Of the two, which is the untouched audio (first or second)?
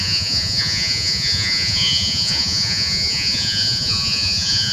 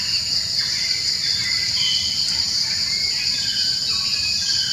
second